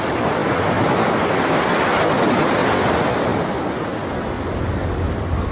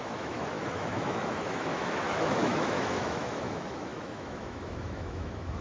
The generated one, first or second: second